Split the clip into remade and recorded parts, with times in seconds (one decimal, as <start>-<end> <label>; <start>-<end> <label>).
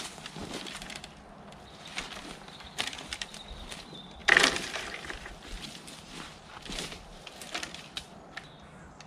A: 0.0-9.1 recorded